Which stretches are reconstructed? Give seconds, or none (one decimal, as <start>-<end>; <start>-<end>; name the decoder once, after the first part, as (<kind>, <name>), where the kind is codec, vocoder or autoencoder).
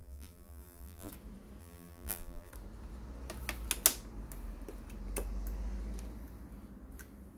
0.0-1.1 (vocoder, BigVGAN v2); 1.6-2.5